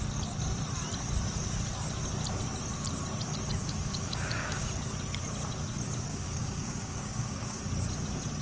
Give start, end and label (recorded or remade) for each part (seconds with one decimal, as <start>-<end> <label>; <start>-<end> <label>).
0.0-3.6 recorded; 3.6-4.7 remade; 4.7-6.1 recorded; 6.1-7.6 remade; 7.6-8.4 recorded